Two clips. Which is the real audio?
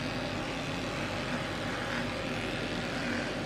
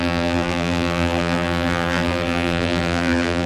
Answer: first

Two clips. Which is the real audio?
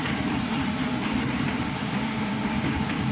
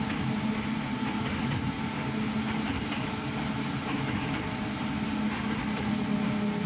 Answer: second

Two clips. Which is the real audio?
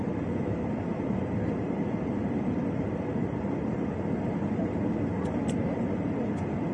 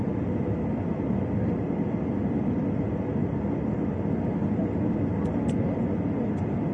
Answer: second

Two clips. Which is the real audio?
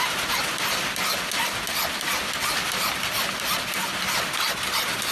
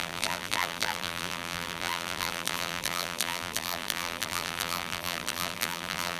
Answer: first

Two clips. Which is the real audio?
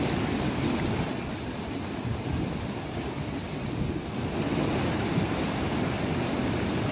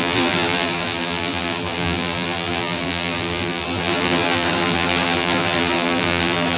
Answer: first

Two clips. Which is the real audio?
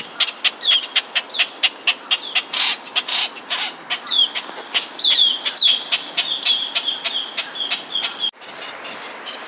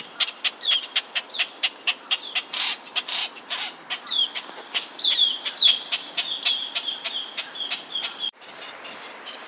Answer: first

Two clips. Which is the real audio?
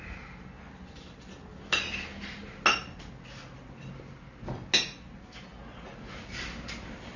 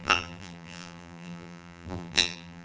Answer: first